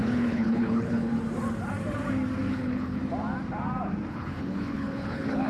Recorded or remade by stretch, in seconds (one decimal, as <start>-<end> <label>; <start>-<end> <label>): 0.0-1.1 remade; 1.1-2.5 recorded; 2.5-3.0 remade; 3.0-4.1 recorded; 4.1-5.5 remade